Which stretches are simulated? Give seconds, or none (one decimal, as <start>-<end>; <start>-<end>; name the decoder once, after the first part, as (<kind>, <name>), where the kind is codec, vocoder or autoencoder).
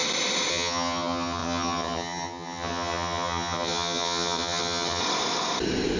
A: 0.5-5.0 (vocoder, HiFi-GAN)